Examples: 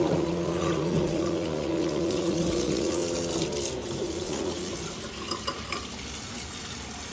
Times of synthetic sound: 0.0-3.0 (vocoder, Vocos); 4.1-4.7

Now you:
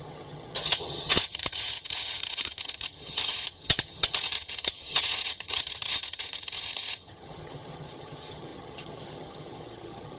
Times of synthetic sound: 0.0-10.2 (vocoder, HiFi-GAN)

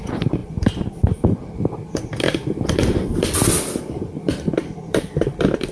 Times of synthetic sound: 0.0-5.7 (vocoder, BigVGAN v2)

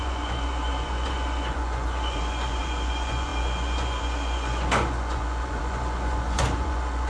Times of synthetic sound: 0.0-7.1 (vocoder, Vocos)